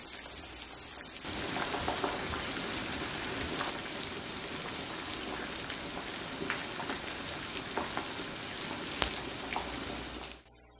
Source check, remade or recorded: recorded